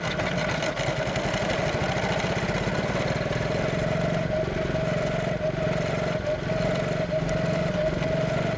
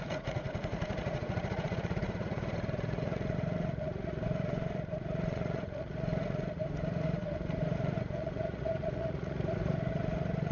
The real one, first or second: first